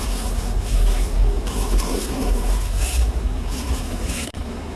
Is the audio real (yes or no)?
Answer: no